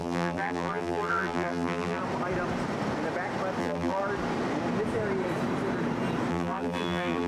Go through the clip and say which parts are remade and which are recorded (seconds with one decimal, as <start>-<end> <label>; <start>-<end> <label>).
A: 0.0-2.0 remade; 2.0-3.6 recorded; 3.6-4.0 remade; 4.0-6.3 recorded; 6.3-7.3 remade